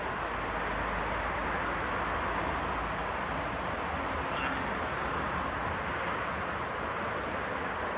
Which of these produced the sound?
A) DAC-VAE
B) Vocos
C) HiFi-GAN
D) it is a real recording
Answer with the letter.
D